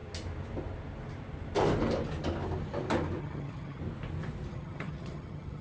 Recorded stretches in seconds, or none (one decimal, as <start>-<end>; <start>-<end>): 0.0-3.2; 3.8-4.5